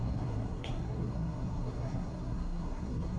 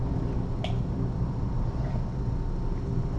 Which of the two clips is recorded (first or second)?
second